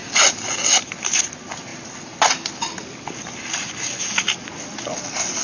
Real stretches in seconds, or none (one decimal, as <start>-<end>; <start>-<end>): 0.0-5.4

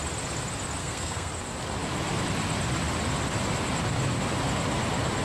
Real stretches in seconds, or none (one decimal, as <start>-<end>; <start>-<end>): 0.0-0.8; 1.3-5.2

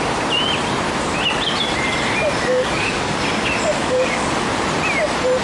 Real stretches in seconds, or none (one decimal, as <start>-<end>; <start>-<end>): 0.0-2.5; 3.2-3.8; 4.3-5.4

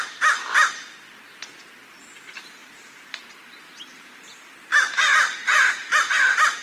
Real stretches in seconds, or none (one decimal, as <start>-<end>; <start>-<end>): 0.0-2.6